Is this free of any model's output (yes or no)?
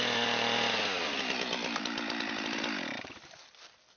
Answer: yes